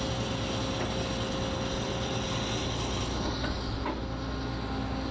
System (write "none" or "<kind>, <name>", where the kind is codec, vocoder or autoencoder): none